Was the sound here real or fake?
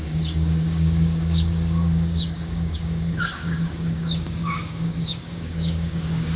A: fake